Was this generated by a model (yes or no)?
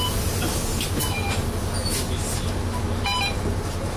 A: no